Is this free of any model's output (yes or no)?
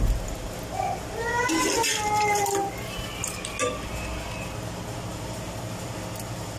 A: yes